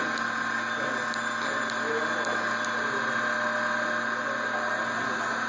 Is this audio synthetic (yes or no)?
no